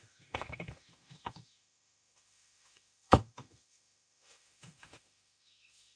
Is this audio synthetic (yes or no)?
yes